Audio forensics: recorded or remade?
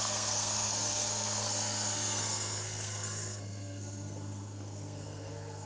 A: remade